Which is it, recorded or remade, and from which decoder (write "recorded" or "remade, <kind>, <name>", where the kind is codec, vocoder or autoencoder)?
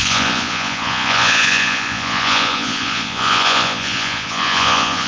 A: remade, vocoder, Vocos